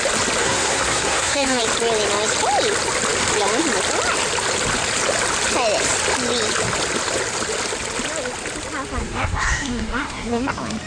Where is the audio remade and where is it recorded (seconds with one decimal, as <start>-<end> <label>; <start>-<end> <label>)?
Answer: 0.0-0.4 recorded; 0.4-1.6 remade; 1.6-9.0 recorded; 9.0-10.5 remade; 10.5-10.9 recorded